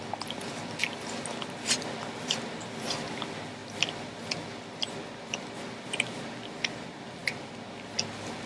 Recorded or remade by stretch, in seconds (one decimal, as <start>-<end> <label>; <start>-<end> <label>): 0.0-8.5 recorded